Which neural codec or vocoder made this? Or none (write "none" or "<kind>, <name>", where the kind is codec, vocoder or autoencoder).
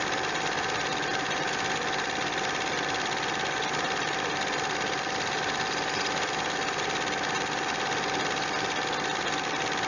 none